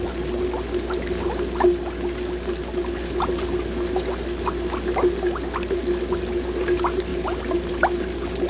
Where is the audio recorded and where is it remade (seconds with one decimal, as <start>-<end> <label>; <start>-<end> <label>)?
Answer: 0.0-8.5 recorded